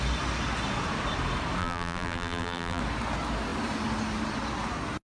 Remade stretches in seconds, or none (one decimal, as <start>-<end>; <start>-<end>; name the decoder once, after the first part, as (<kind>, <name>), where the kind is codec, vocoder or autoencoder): 1.6-2.8 (vocoder, BigVGAN v2)